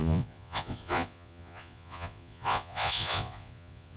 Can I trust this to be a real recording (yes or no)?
no